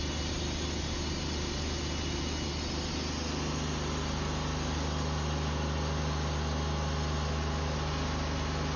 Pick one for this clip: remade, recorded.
recorded